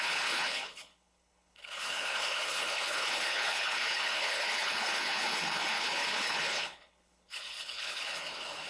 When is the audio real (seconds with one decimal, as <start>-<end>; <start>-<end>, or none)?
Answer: none